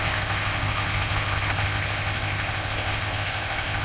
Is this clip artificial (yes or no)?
yes